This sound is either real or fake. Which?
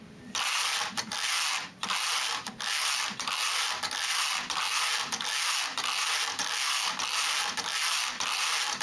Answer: real